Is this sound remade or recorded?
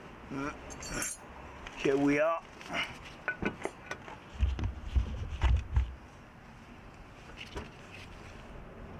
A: recorded